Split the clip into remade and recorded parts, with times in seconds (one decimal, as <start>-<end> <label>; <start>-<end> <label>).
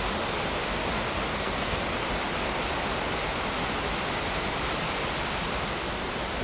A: 0.0-1.3 recorded; 1.3-1.8 remade; 1.8-6.4 recorded